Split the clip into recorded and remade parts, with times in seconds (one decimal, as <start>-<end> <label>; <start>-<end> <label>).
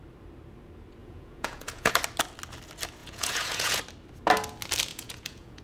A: 0.0-1.0 recorded; 1.0-1.9 remade; 1.9-3.0 recorded; 3.0-3.8 remade; 3.8-4.9 recorded; 4.9-5.6 remade